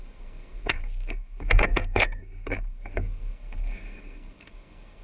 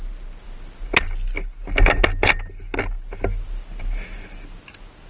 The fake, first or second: first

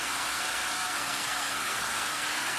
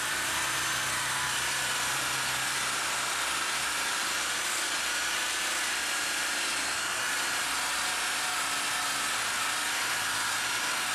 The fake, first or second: first